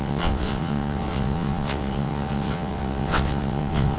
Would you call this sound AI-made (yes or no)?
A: yes